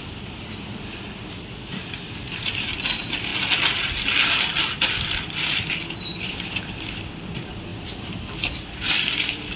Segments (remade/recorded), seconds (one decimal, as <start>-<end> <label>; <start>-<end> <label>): 0.0-3.3 remade; 3.3-4.6 recorded; 4.6-9.6 remade